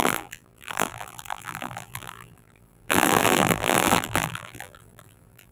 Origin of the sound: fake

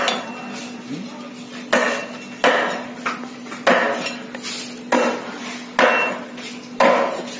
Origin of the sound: real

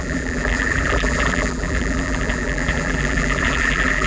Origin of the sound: fake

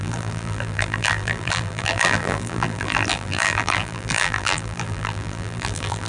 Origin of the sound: fake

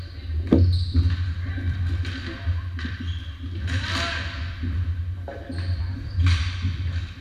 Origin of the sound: real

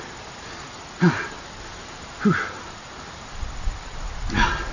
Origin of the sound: real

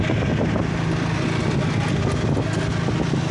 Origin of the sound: real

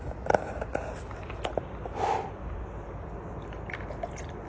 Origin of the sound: real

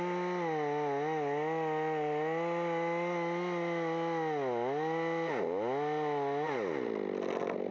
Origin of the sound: real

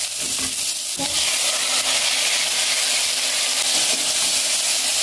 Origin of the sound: real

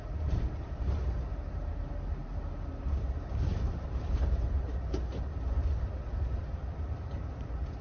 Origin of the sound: fake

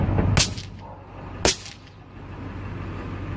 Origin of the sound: real